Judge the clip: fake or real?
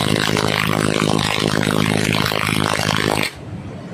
real